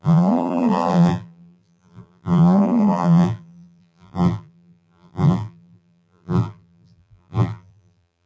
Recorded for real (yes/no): no